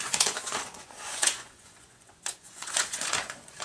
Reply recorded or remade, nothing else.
remade